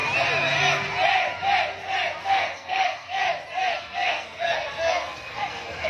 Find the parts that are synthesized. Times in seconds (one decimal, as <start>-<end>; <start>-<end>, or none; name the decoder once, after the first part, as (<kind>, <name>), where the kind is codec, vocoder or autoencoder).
2.2-3.2 (codec, SNAC); 3.8-5.9